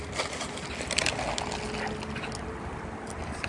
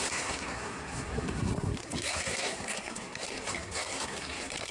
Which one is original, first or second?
first